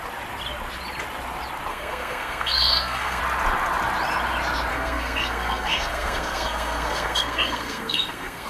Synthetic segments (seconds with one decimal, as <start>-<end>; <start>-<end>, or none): 1.7-3.2; 4.7-8.5